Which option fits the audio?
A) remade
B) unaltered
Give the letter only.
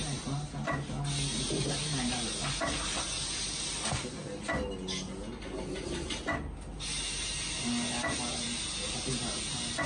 B